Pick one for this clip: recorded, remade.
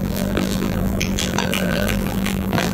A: remade